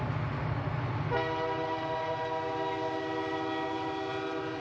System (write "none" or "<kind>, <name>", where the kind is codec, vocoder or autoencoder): none